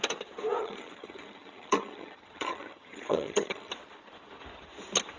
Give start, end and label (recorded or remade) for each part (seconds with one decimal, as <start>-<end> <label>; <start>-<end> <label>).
0.0-0.6 recorded; 0.6-3.7 remade; 3.7-5.2 recorded